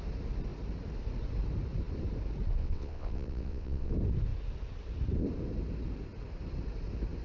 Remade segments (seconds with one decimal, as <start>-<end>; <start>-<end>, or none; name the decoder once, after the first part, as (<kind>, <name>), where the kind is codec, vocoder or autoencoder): 2.6-3.9 (vocoder, WaveNeXt)